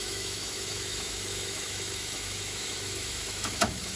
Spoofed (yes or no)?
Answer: yes